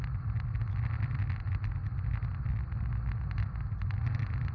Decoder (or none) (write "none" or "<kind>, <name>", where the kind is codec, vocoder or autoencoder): none